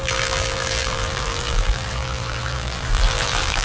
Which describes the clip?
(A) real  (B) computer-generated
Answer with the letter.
B